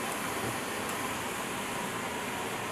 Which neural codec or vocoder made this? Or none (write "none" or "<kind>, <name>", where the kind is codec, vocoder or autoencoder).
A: none